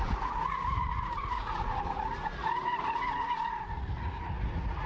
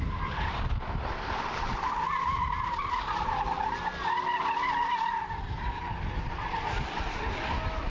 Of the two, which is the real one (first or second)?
second